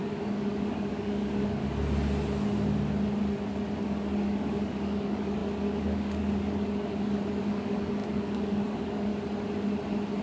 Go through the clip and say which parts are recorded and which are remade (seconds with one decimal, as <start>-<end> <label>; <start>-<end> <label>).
0.0-1.6 remade; 1.6-3.8 recorded; 3.8-9.1 remade; 9.1-10.2 recorded